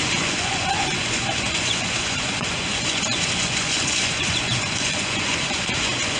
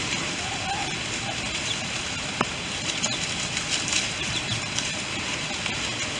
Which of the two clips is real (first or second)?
second